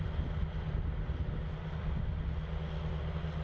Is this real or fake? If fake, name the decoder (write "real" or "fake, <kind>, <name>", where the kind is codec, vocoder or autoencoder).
real